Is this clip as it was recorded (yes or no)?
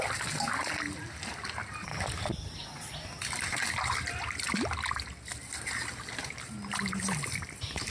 yes